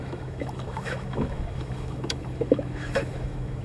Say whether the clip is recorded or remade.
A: remade